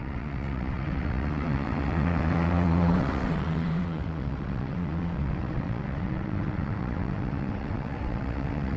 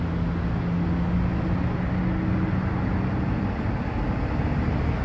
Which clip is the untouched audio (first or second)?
second